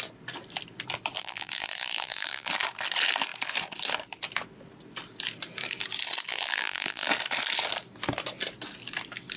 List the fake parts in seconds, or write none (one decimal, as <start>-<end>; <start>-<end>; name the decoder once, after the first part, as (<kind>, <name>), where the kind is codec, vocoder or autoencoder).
1.2-2.5 (vocoder, BigVGAN v2); 6.3-7.1

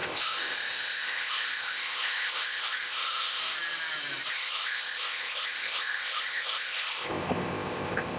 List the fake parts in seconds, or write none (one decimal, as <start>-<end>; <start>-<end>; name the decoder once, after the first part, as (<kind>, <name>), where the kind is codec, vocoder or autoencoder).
0.0-3.4 (codec, ZipCodec); 4.3-8.2

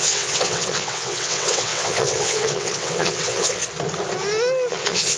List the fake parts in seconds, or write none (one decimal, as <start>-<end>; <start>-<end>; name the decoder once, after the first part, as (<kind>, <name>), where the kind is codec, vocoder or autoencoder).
0.0-3.6 (vocoder, WaveNeXt); 4.7-5.2

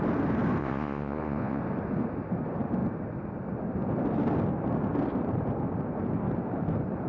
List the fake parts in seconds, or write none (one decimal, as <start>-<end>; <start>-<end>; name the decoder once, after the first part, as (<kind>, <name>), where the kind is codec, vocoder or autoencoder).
0.6-1.6 (vocoder, Vocos)

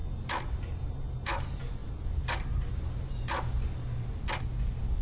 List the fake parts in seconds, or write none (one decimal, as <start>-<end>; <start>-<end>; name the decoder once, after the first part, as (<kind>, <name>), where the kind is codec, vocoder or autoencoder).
none

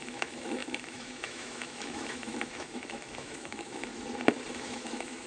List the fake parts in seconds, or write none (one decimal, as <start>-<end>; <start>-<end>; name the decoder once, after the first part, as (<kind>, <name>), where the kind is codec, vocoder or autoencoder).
0.0-3.9 (autoencoder, DAC-VAE); 4.5-5.3

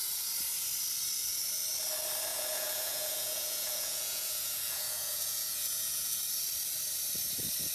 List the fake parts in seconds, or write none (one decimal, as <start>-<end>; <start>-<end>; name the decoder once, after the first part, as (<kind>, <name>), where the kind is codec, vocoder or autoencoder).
2.3-6.2 (vocoder, Vocos)